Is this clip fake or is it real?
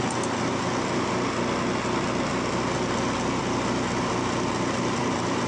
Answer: real